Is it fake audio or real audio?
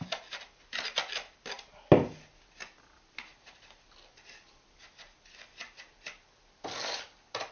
real